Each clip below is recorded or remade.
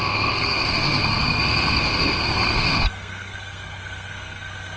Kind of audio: remade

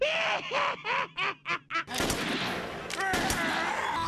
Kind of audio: recorded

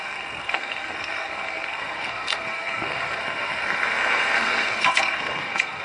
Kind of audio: remade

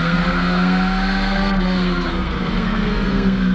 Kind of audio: remade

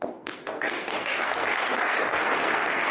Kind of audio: remade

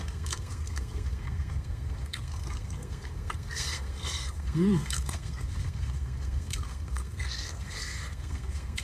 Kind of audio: remade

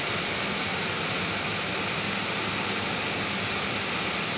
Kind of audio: recorded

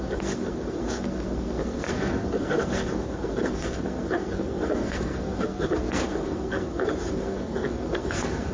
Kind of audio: remade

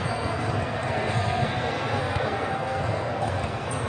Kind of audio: remade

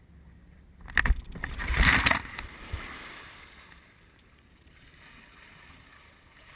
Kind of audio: recorded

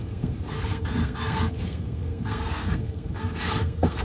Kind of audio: remade